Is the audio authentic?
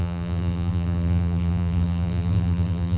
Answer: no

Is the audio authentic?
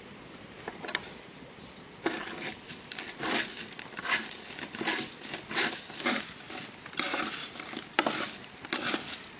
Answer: yes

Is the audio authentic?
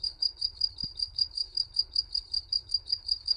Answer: no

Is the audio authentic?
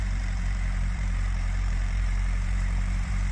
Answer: no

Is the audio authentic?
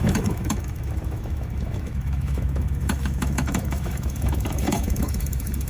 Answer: no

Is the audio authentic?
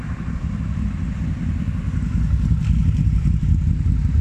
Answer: yes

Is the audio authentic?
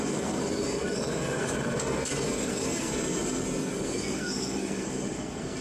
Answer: no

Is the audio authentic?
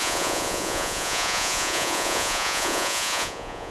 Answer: no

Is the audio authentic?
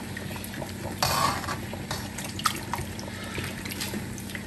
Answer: yes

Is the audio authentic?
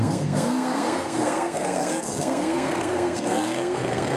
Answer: no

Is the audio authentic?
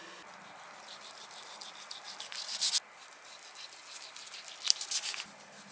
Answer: yes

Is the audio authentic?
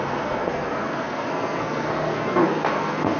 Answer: no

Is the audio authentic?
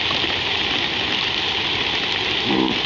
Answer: yes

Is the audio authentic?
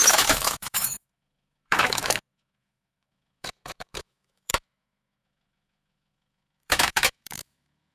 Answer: no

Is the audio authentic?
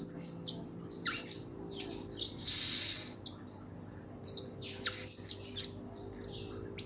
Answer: yes